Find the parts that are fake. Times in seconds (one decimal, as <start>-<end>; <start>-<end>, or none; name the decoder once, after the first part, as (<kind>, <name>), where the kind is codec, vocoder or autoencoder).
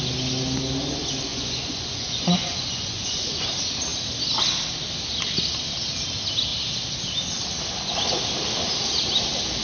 1.3-3.5 (vocoder, Vocos)